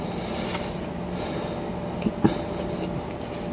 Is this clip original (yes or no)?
yes